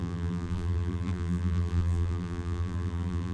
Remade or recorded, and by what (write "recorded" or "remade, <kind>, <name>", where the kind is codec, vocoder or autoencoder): remade, vocoder, BigVGAN v2